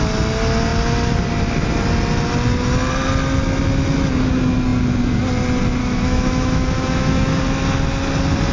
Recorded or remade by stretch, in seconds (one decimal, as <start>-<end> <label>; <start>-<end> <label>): 0.0-5.8 recorded; 5.8-7.4 remade; 7.4-8.5 recorded